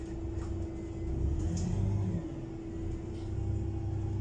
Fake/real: real